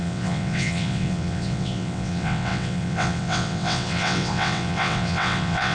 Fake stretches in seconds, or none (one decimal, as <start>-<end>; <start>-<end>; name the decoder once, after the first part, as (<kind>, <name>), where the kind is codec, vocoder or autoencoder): 0.0-5.7 (vocoder, WaveNeXt)